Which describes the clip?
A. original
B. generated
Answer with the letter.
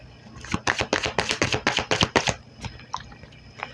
B